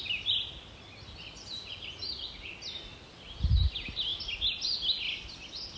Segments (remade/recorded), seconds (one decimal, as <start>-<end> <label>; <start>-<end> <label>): 0.0-2.0 recorded; 2.0-2.5 remade; 2.5-5.8 recorded